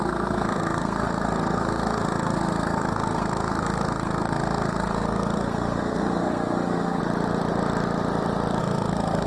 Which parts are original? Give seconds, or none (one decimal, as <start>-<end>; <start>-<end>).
7.0-8.6